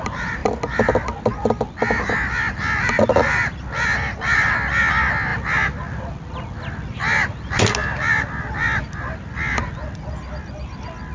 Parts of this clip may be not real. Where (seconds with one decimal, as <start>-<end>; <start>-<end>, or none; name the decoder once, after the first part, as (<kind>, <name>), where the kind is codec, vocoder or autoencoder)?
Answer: none

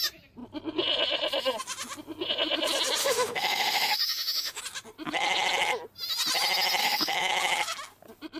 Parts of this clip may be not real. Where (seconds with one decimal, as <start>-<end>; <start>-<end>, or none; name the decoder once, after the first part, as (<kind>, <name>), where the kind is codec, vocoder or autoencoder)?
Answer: 3.0-4.6 (autoencoder, DAC-VAE); 6.8-7.3